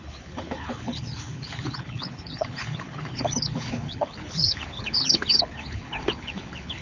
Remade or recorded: remade